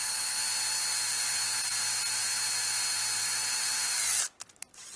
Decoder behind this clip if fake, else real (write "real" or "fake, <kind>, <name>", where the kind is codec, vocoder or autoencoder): real